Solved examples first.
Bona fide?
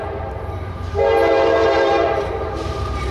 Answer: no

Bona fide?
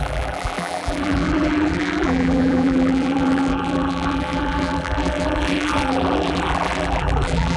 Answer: no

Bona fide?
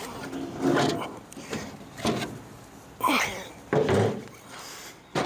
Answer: yes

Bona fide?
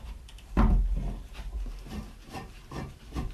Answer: no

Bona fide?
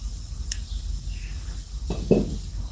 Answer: yes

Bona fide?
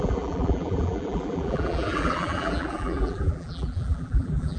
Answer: no